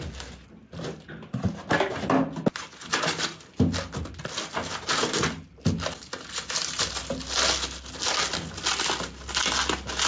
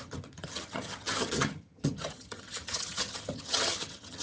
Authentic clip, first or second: first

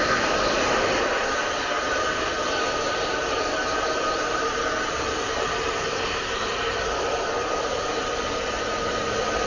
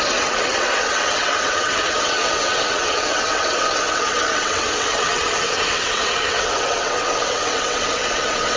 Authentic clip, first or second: first